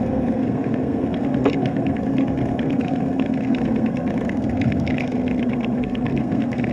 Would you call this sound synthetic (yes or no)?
yes